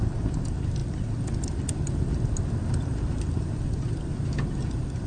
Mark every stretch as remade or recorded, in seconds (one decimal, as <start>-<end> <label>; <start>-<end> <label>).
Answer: 0.0-5.1 recorded